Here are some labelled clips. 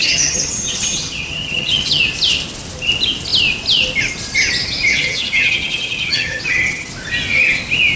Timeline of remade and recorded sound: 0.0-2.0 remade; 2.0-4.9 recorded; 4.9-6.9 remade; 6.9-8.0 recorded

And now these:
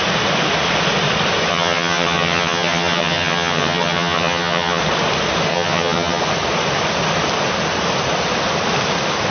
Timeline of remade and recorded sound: 0.0-1.5 recorded; 1.5-4.8 remade; 4.8-5.5 recorded; 5.5-6.2 remade; 6.2-9.3 recorded

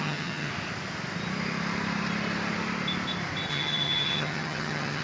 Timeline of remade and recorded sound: 0.0-0.5 remade; 0.5-3.5 recorded; 3.5-5.0 remade

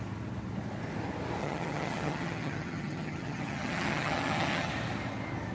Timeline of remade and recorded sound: 0.0-1.4 recorded; 1.4-4.7 remade; 4.7-5.5 recorded

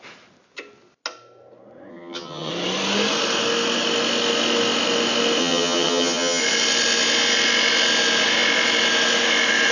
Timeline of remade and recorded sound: 0.0-1.9 recorded; 1.9-2.5 remade; 2.5-5.4 recorded; 5.4-6.4 remade; 6.4-9.7 recorded